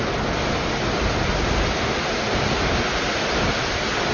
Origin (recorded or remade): recorded